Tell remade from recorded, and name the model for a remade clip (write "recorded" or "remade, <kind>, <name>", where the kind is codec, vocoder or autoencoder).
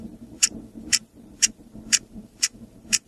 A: remade, vocoder, BigVGAN v2